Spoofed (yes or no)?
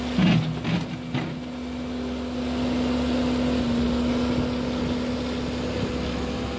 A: no